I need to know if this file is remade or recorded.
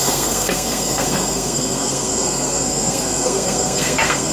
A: remade